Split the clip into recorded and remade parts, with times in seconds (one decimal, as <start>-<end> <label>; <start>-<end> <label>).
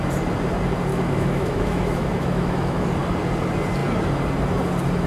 0.0-0.9 recorded; 0.9-2.9 remade; 2.9-5.1 recorded